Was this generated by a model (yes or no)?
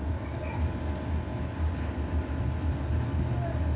no